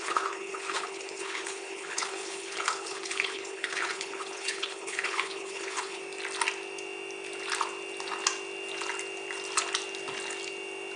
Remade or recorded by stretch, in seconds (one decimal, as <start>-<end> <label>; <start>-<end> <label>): 0.0-6.0 remade; 6.0-11.0 recorded